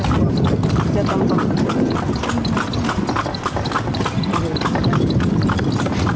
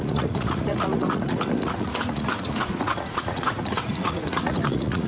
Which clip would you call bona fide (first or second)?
first